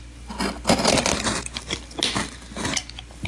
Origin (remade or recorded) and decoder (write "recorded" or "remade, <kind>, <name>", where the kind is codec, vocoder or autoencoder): recorded